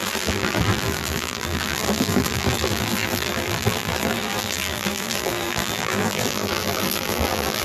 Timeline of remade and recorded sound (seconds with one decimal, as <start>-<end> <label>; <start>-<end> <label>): 0.0-7.6 remade